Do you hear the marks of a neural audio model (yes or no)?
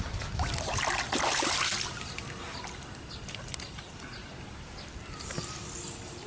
no